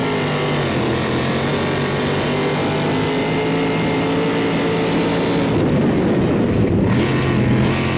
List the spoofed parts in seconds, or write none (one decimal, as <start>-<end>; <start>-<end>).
none